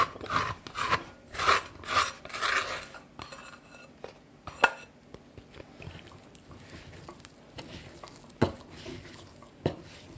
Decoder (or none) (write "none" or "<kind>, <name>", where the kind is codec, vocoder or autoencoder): none